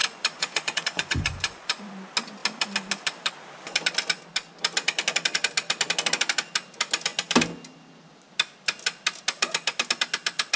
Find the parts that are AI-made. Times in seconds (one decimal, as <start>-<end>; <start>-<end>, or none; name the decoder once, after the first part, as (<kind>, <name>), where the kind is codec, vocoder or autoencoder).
0.0-1.9 (vocoder, Vocos)